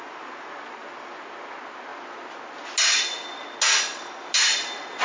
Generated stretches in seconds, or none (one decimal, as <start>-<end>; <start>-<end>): none